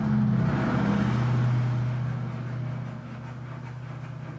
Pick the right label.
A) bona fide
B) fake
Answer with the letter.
A